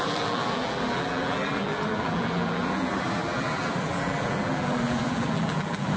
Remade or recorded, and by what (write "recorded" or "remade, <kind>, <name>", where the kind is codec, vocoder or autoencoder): remade, vocoder, BigVGAN v2